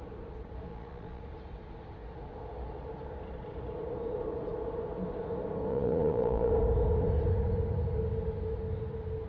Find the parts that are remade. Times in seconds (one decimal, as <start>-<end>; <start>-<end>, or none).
0.7-1.2; 5.7-6.5